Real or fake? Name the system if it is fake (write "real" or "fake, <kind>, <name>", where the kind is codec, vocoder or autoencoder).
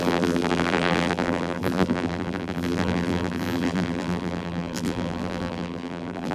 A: fake, vocoder, BigVGAN v2